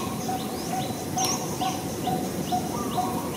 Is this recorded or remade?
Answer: recorded